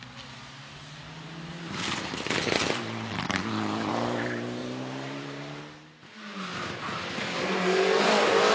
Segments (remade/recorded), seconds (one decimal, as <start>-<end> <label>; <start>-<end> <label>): 0.0-2.8 recorded; 2.8-3.9 remade; 3.9-4.6 recorded; 4.6-5.6 remade; 5.6-8.5 recorded